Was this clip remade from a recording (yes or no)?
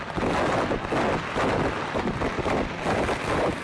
no